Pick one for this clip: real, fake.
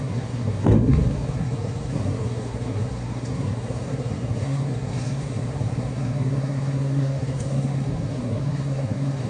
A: fake